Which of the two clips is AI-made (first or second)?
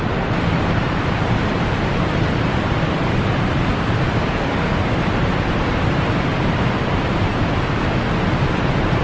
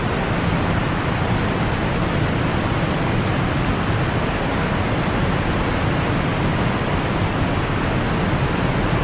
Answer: first